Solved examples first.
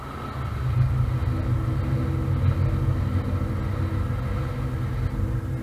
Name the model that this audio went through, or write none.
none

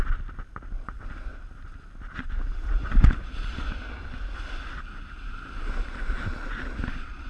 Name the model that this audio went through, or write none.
none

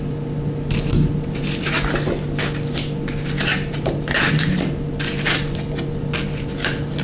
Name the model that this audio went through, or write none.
none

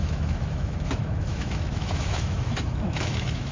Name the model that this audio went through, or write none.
autoencoder, DAC-VAE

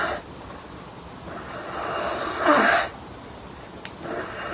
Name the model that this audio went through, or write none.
none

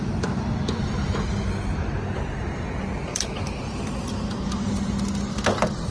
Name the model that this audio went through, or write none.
none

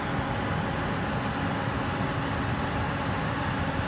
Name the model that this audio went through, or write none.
none